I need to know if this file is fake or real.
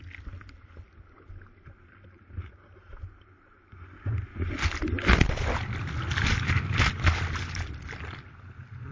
real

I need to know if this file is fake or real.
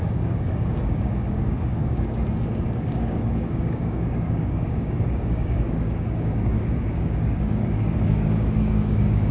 fake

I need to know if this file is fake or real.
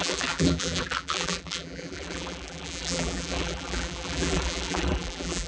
fake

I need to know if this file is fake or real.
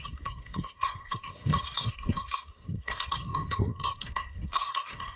fake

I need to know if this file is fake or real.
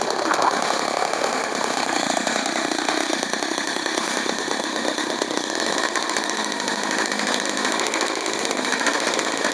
fake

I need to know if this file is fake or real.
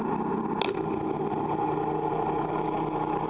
real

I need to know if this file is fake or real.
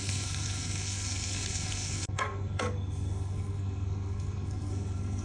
fake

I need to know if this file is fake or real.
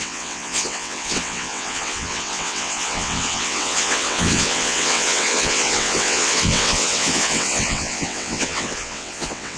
fake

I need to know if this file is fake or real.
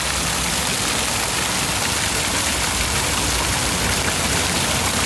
real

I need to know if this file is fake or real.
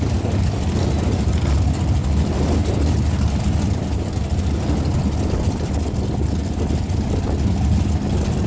real